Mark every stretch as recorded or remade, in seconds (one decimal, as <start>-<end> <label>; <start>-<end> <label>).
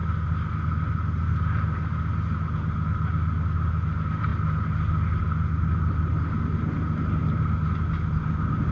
0.0-8.7 recorded